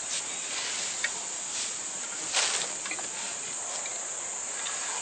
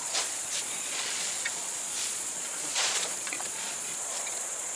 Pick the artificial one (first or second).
second